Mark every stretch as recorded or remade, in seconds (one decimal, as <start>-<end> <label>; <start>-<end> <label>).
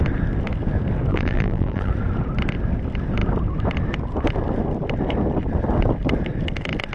0.0-1.1 recorded; 1.1-1.9 remade; 1.9-6.9 recorded